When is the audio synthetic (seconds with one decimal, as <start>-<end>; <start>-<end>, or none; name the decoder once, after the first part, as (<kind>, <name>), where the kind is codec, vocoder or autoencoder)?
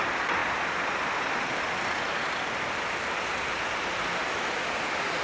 none